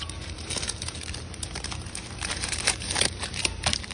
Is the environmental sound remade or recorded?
remade